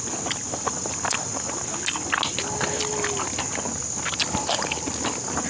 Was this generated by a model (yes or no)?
no